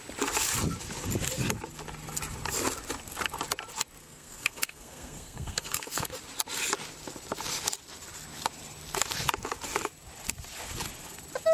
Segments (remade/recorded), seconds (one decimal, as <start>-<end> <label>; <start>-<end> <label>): 0.0-4.0 recorded; 4.0-6.2 remade; 6.2-11.5 recorded